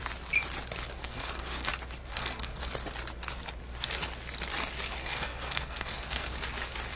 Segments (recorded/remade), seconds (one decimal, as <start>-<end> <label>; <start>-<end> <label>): 0.0-1.0 recorded; 1.0-1.7 remade; 1.7-2.1 recorded; 2.1-2.6 remade; 2.6-5.0 recorded; 5.0-6.4 remade; 6.4-7.0 recorded